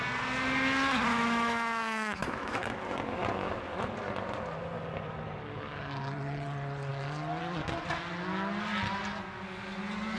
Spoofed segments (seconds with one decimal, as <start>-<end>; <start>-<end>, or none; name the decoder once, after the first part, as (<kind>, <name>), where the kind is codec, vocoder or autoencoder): 1.1-2.7 (autoencoder, DAC-VAE)